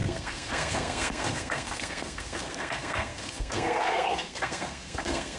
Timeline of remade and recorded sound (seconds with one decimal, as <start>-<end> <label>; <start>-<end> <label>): 0.0-5.4 remade

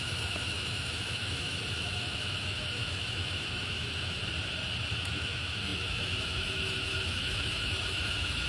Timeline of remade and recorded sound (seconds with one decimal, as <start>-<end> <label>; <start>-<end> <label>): 0.0-4.2 remade; 4.2-4.9 recorded; 4.9-8.5 remade

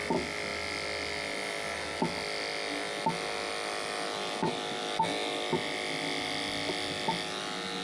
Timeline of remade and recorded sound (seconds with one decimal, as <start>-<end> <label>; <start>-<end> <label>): 0.0-7.8 recorded

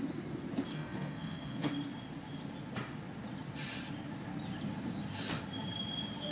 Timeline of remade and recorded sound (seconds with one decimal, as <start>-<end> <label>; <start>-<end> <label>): 0.0-0.7 recorded; 0.7-1.7 remade; 1.7-6.3 recorded

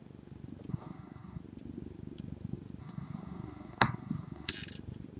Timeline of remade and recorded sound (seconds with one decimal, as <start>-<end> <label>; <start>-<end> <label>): 0.0-0.7 recorded; 0.7-1.4 remade; 1.4-2.8 recorded; 2.8-4.5 remade; 4.5-5.2 recorded

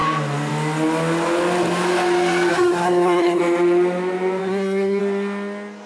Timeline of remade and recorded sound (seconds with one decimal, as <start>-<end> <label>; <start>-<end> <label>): 0.0-2.5 recorded; 2.5-3.4 remade; 3.4-4.4 recorded; 4.4-5.0 remade; 5.0-5.9 recorded

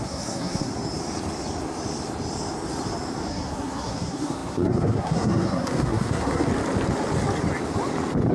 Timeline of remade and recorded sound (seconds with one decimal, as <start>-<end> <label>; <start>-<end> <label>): 0.0-0.7 remade; 0.7-3.3 recorded; 3.3-6.5 remade; 6.5-8.3 recorded

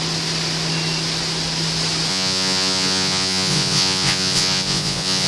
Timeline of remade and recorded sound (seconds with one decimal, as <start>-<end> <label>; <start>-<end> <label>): 0.0-2.1 recorded; 2.1-5.3 remade